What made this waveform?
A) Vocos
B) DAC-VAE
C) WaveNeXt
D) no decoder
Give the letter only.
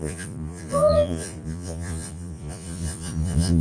A